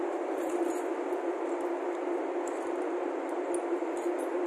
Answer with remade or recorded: recorded